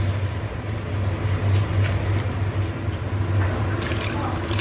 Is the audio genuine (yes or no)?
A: yes